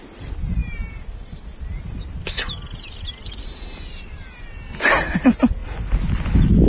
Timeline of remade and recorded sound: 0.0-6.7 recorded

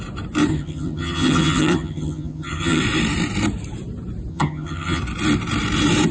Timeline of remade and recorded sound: 0.0-0.5 recorded; 0.5-2.8 remade; 2.8-4.3 recorded; 4.3-5.0 remade; 5.0-6.1 recorded

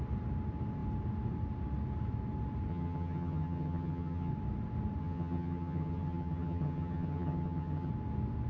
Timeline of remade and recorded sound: 0.0-2.7 recorded; 2.7-4.3 remade; 4.3-5.0 recorded; 5.0-7.9 remade; 7.9-8.5 recorded